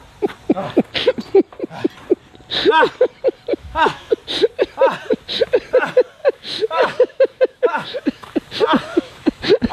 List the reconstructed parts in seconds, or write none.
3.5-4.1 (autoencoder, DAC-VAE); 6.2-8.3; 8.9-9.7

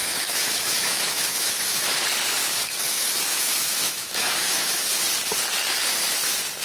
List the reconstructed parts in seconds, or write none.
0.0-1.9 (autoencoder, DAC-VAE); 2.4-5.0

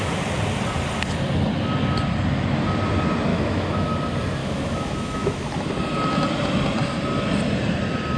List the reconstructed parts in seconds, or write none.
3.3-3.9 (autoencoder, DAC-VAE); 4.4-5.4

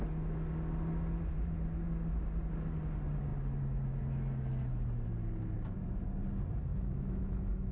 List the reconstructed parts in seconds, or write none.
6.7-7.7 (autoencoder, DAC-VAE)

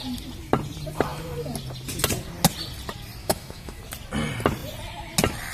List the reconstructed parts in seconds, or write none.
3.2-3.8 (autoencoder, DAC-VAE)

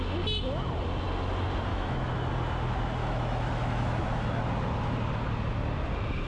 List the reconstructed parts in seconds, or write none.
1.7-2.3 (autoencoder, DAC-VAE); 3.0-4.4

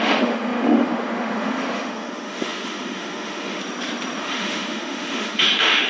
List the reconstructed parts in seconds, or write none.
0.0-3.6 (autoencoder, DAC-VAE); 4.2-5.9